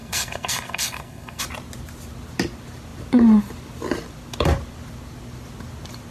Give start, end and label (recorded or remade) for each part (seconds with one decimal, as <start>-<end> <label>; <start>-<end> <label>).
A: 0.0-1.4 remade; 1.4-6.1 recorded

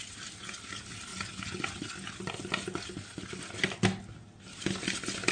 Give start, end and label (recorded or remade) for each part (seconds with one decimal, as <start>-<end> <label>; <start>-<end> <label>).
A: 0.0-5.3 recorded

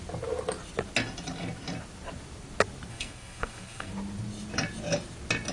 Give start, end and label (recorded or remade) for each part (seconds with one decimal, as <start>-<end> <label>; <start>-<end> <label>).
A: 0.0-2.9 recorded; 2.9-3.9 remade; 3.9-5.5 recorded

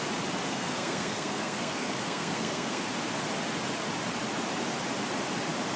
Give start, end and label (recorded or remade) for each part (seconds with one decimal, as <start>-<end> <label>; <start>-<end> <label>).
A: 0.0-0.5 recorded; 0.5-2.8 remade; 2.8-5.8 recorded

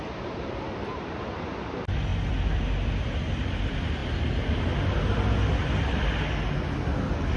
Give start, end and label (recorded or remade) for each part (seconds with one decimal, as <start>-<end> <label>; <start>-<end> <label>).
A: 0.0-7.4 recorded

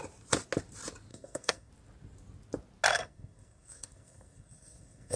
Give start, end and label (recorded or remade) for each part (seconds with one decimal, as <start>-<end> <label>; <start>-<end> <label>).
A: 0.0-1.1 recorded; 1.1-1.7 remade; 1.7-2.9 recorded; 2.9-5.2 remade